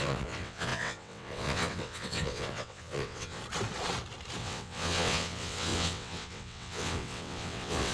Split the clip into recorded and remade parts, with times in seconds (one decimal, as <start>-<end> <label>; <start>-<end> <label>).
0.0-3.4 remade; 3.4-4.4 recorded; 4.4-7.9 remade